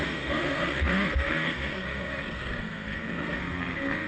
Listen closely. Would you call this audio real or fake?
fake